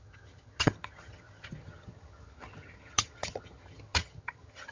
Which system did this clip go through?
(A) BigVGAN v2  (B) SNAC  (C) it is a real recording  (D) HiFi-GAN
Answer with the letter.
D